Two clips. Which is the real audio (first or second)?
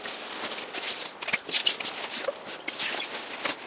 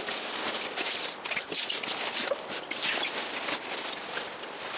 first